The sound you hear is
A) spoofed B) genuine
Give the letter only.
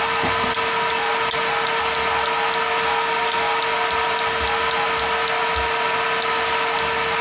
B